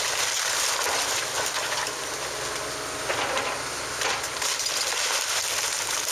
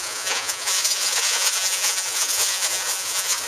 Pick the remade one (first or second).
second